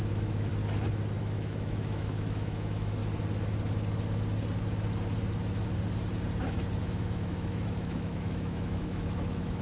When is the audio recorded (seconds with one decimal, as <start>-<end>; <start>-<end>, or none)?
0.5-1.2; 3.0-6.8